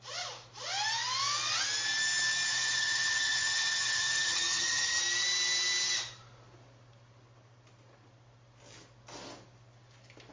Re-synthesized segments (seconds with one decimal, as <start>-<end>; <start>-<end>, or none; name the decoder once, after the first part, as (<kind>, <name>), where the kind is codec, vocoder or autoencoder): 2.5-5.0 (vocoder, HiFi-GAN)